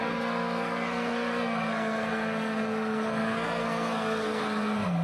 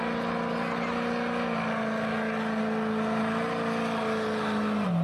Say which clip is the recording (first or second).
second